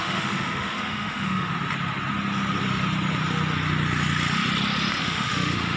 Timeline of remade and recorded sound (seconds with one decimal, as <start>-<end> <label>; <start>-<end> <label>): 0.0-1.5 remade; 1.5-5.0 recorded; 5.0-5.8 remade